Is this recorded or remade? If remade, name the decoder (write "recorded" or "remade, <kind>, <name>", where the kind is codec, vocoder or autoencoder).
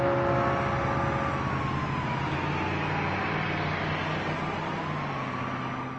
recorded